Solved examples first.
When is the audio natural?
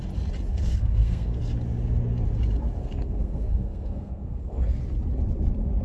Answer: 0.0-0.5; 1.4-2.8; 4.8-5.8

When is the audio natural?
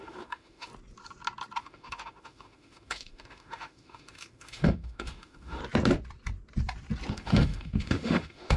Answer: 0.7-1.6; 5.6-7.1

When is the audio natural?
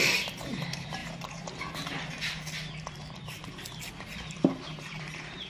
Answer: 1.0-3.9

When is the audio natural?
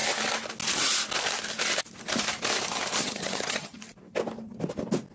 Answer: 0.0-3.0; 3.8-5.1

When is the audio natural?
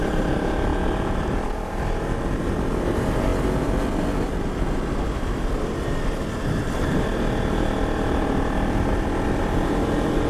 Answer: 0.0-10.3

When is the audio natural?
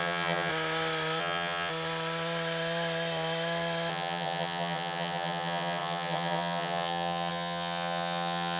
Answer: 0.5-1.2; 1.7-3.9